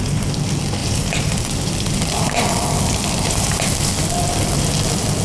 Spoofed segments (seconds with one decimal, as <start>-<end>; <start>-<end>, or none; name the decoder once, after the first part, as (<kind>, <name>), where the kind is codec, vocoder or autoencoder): 0.8-3.9 (vocoder, BigVGAN v2)